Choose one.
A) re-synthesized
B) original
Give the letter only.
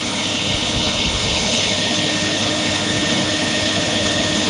A